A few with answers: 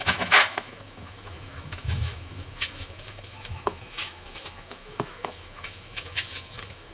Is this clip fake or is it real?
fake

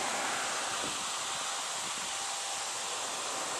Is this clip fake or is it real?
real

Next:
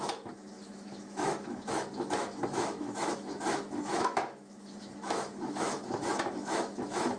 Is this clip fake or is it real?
fake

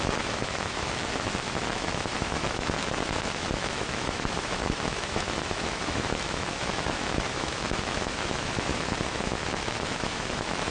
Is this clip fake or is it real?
fake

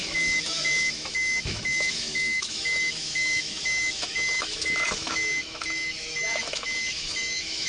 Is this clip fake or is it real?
fake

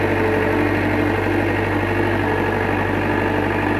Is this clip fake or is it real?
real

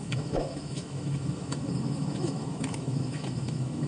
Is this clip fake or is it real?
fake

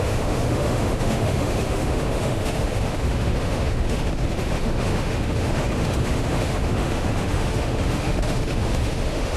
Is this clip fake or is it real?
fake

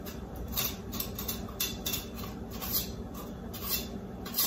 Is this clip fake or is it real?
real